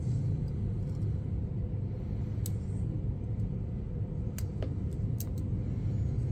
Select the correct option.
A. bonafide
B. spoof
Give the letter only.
A